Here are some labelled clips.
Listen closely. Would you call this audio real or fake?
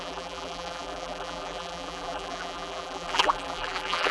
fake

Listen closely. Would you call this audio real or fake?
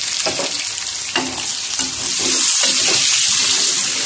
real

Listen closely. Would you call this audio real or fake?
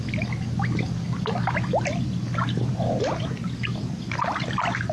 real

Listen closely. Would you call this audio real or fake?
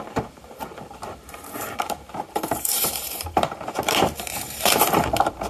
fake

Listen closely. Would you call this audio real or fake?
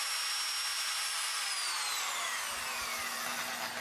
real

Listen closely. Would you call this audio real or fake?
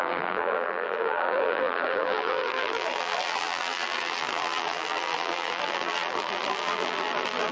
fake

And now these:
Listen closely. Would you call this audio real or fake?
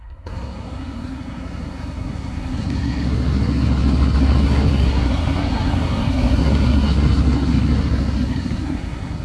fake